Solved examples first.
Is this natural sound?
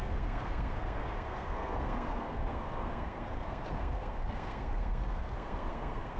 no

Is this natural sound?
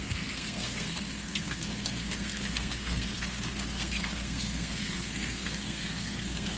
no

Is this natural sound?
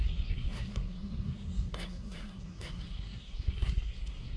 no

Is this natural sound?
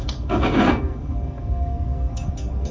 no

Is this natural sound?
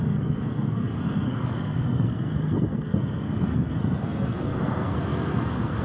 no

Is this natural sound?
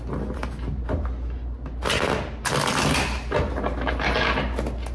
yes